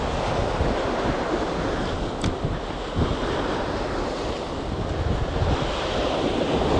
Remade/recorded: recorded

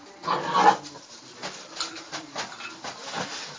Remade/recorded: recorded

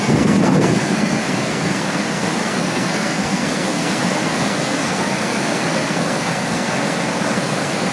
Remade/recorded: remade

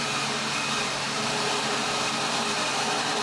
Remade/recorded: recorded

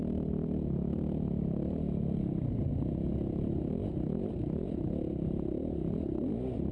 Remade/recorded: recorded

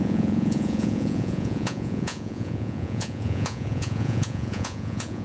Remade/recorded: remade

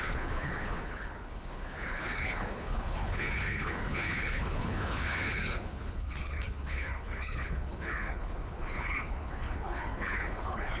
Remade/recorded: remade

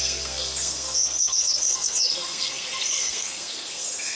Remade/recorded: remade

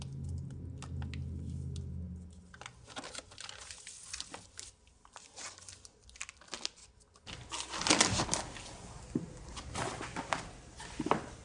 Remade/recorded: recorded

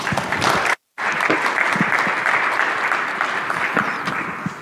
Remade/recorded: recorded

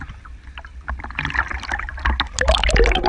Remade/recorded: recorded